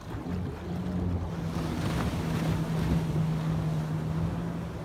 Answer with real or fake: real